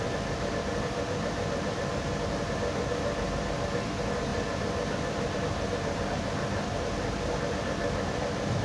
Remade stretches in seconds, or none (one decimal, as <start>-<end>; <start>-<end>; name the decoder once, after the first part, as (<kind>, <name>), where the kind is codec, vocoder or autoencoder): 0.0-8.6 (vocoder, BigVGAN v2)